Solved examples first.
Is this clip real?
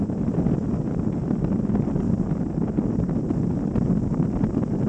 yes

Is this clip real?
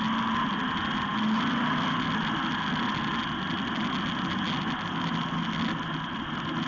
yes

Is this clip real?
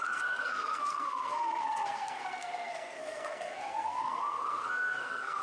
no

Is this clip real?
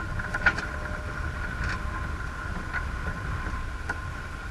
yes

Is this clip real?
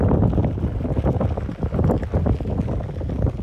yes